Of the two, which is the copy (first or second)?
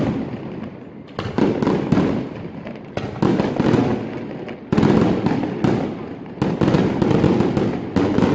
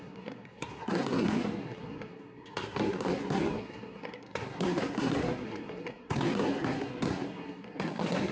second